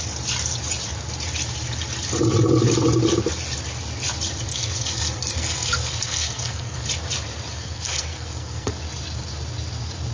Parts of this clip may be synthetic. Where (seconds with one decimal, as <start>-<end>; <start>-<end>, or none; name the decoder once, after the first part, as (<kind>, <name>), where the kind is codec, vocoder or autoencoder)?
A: 4.5-6.8 (codec, SNAC); 7.5-8.7